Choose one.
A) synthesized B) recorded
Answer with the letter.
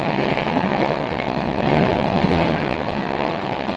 A